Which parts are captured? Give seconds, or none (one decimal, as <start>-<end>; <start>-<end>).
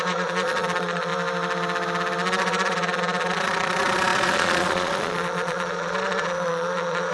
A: 1.1-2.4